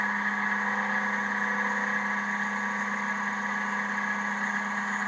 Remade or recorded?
recorded